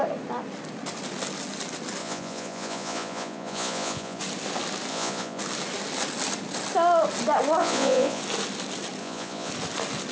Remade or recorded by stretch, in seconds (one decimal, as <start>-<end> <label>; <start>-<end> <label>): 0.0-2.0 recorded; 2.0-4.2 remade; 4.2-4.9 recorded; 4.9-5.4 remade; 5.4-7.6 recorded; 7.6-8.2 remade; 8.2-9.0 recorded; 9.0-9.5 remade; 9.5-10.1 recorded